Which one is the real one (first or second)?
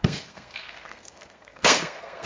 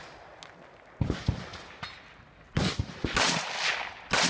second